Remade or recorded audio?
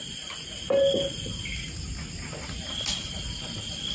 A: recorded